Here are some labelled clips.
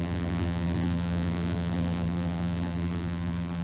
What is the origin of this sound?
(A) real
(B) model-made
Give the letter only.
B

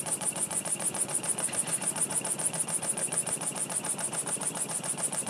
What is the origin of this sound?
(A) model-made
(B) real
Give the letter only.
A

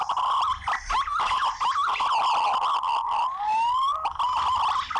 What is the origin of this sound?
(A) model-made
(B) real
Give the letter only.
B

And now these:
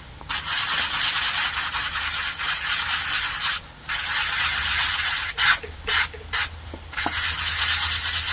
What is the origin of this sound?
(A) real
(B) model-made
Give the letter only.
A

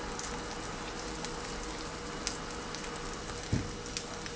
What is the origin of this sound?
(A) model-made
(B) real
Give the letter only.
B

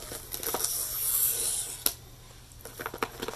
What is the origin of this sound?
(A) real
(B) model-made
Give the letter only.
A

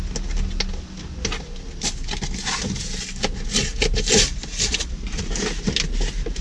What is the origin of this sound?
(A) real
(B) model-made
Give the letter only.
A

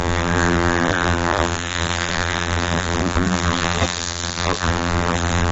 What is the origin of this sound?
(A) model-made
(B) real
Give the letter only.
A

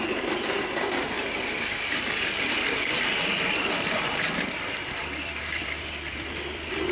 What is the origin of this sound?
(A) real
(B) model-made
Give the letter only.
B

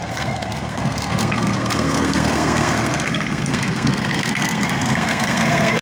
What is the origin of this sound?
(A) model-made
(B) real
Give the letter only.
A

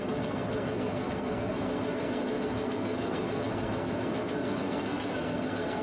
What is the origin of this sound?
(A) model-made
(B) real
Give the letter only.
A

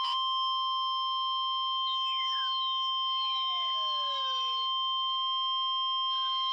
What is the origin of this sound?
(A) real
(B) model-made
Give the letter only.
B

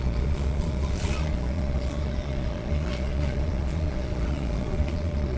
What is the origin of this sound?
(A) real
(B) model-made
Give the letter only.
B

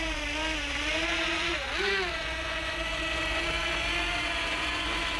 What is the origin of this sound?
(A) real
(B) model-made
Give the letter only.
B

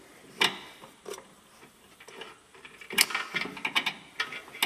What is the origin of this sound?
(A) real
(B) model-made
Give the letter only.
A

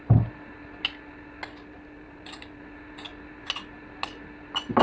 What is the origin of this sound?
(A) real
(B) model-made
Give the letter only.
A